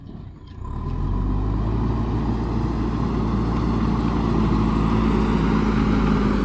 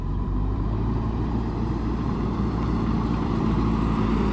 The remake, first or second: second